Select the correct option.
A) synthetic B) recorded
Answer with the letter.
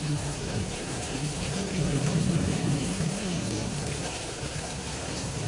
A